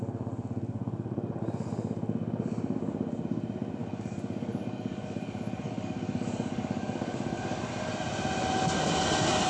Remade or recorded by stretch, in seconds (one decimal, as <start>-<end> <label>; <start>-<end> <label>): 0.0-3.8 recorded; 3.8-7.9 remade; 7.9-9.5 recorded